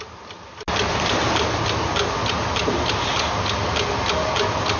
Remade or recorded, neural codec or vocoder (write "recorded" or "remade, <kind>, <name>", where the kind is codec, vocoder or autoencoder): recorded